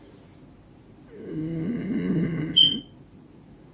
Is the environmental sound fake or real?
real